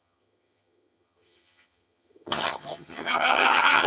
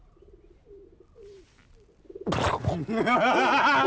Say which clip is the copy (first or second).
first